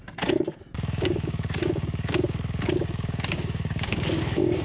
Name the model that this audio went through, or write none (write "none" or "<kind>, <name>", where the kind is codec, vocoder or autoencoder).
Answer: codec, DAC